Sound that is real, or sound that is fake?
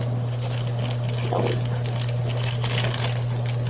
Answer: real